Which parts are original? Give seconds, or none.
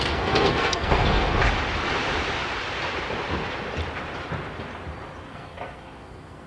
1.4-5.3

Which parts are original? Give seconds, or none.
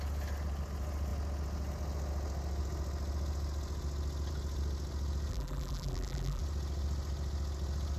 0.0-5.3; 6.4-8.0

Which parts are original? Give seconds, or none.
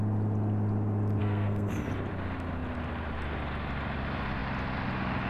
0.0-1.2; 1.7-5.3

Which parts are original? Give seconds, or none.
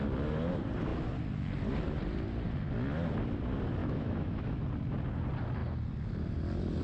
0.0-3.8; 4.6-6.8